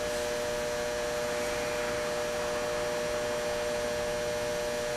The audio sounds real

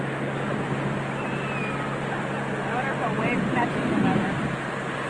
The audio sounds real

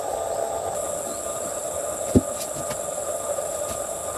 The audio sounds real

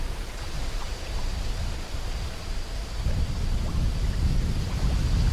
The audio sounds real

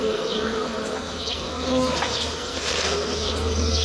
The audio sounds fake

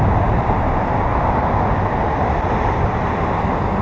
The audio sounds real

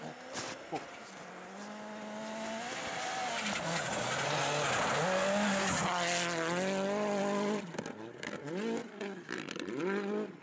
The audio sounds real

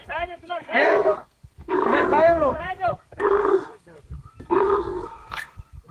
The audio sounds fake